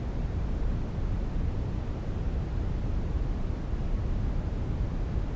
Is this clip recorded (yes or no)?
yes